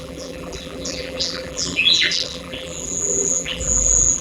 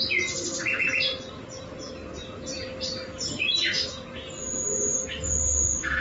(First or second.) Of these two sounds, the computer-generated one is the first